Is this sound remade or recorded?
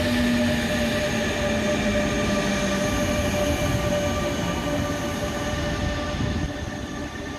recorded